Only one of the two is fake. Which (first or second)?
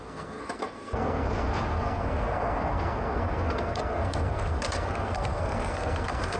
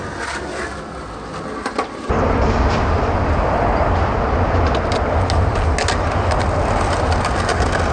first